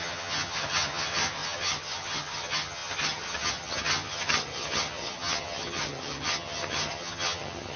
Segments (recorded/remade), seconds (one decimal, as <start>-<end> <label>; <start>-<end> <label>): 0.0-7.8 remade